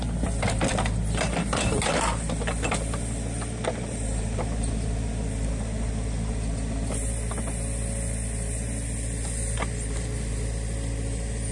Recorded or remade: recorded